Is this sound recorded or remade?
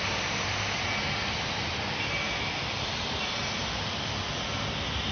recorded